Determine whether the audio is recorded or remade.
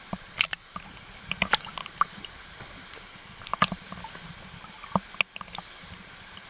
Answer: recorded